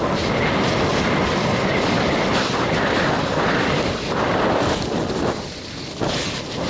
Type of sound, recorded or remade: recorded